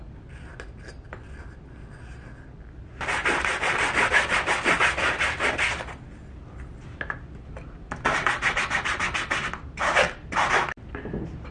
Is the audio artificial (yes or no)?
no